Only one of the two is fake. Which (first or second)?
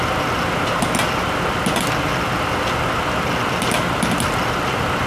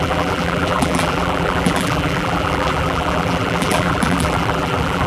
second